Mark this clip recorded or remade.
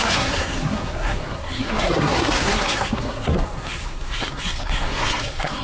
remade